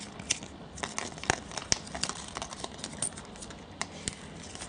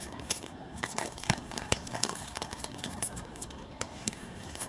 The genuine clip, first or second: first